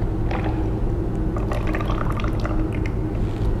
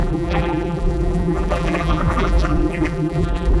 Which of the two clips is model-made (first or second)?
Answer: second